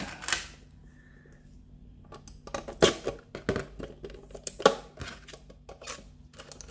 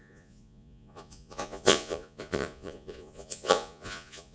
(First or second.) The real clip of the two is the first